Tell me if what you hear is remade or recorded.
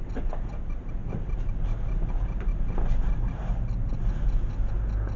recorded